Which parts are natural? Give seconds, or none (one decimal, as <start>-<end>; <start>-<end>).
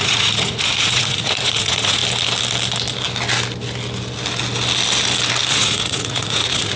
2.0-5.5